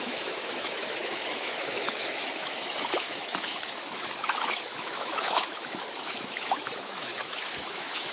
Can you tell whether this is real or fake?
fake